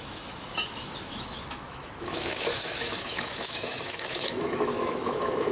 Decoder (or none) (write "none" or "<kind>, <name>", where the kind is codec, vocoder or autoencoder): autoencoder, DAC-VAE